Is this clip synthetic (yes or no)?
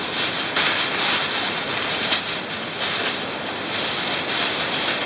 yes